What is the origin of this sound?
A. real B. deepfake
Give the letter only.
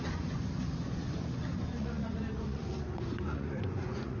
B